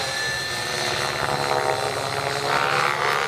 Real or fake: real